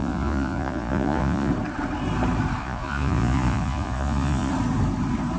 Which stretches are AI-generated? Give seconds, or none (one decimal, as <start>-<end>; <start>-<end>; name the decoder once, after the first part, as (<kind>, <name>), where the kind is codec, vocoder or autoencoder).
0.0-1.5 (vocoder, Vocos); 2.6-4.5